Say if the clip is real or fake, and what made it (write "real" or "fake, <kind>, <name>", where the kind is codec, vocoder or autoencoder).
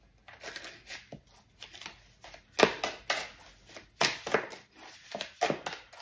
real